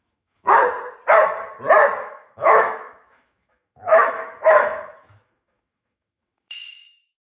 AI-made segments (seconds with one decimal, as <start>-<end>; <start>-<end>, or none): 0.0-0.6; 2.0-7.3